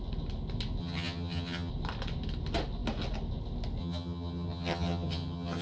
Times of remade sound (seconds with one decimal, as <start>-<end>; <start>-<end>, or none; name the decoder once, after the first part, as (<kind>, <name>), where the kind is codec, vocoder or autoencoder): 0.8-1.7 (vocoder, HiFi-GAN); 3.8-5.6